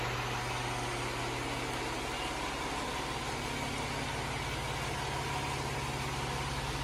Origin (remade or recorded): recorded